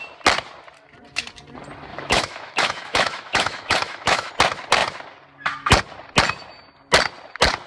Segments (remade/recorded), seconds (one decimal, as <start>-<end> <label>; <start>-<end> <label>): 0.0-1.9 recorded; 1.9-4.3 remade; 4.3-7.7 recorded